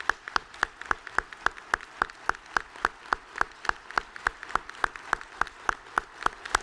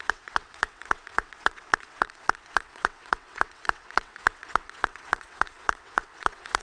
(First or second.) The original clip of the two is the first